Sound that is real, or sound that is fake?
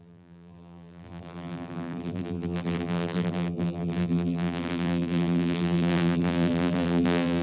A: fake